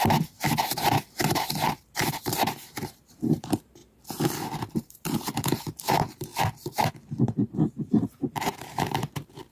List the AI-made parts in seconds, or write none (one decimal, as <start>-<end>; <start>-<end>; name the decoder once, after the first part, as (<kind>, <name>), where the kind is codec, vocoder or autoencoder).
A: 0.0-3.8 (vocoder, BigVGAN v2); 4.7-6.3; 6.9-9.5